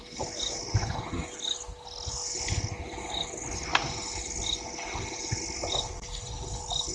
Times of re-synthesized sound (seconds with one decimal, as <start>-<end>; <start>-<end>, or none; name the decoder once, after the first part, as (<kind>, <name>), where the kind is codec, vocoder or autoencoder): none